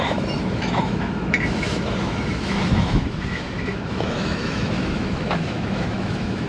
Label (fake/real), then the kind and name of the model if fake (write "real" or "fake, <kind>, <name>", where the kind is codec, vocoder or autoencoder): fake, autoencoder, DAC-VAE